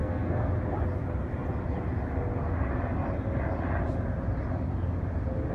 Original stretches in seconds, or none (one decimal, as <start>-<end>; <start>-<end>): 0.5-5.5